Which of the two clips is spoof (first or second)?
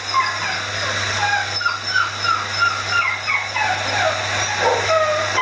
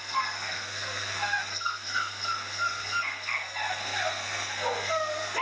second